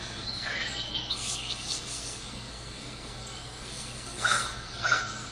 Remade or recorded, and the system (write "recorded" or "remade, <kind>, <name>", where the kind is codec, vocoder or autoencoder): remade, codec, SNAC